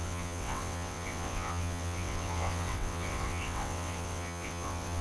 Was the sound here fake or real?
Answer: fake